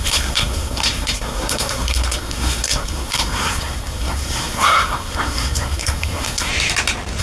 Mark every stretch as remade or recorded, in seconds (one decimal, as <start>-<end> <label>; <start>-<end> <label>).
0.0-6.5 remade; 6.5-7.2 recorded